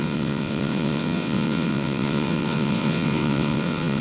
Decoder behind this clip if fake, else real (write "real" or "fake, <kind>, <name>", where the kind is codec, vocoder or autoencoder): fake, vocoder, WaveNeXt